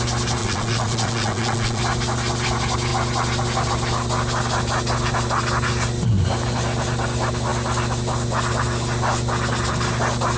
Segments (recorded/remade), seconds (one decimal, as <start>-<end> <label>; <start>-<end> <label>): 0.0-0.4 recorded; 0.4-1.8 remade; 1.8-10.4 recorded